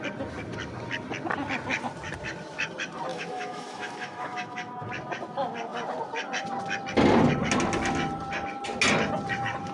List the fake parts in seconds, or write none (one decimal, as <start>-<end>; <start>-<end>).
3.1-4.9